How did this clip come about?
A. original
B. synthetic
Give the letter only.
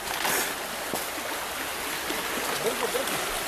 A